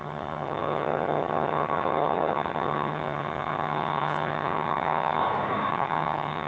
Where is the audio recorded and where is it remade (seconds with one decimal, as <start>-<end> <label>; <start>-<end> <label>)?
0.0-5.2 remade; 5.2-5.7 recorded; 5.7-6.5 remade